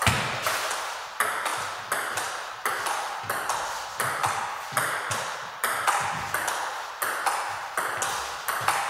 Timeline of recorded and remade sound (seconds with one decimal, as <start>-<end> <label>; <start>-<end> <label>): 0.0-4.2 recorded; 4.2-6.1 remade; 6.1-8.9 recorded